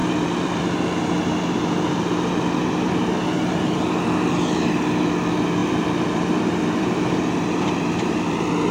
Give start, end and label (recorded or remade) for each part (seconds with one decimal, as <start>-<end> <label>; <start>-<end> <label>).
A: 0.0-1.0 remade; 1.0-5.6 recorded; 5.6-8.7 remade